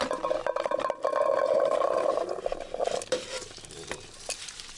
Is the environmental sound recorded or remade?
recorded